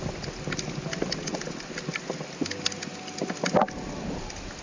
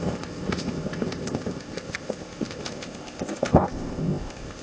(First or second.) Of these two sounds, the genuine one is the first